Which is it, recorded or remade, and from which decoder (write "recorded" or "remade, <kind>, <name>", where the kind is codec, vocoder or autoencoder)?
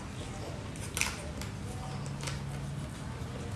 recorded